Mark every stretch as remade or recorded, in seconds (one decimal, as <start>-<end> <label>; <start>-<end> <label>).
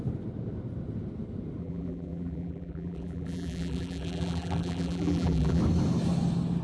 0.0-1.6 recorded; 1.6-5.6 remade; 5.6-6.6 recorded